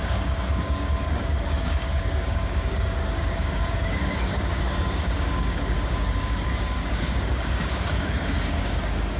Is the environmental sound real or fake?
fake